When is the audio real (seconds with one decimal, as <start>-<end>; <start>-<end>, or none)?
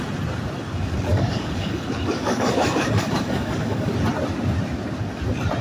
0.0-1.1; 3.9-5.6